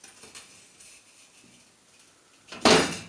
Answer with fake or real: real